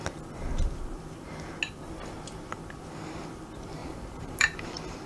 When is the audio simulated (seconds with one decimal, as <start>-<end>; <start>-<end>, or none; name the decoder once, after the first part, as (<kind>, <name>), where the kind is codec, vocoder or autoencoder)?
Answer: 3.8-5.1 (vocoder, BigVGAN v2)